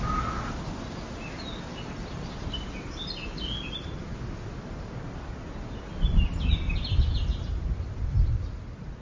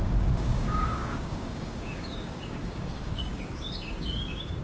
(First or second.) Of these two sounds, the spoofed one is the second